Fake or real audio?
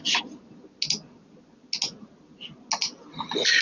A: real